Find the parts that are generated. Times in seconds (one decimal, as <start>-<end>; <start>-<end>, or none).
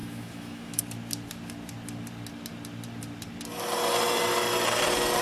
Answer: 0.0-0.8